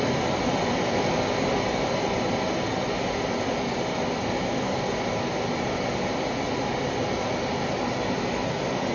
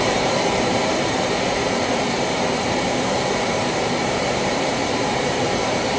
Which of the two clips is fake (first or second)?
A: second